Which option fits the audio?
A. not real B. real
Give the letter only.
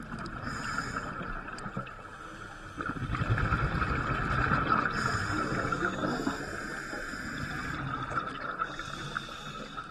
B